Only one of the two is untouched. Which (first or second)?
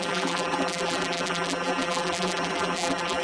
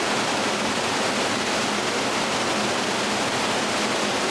second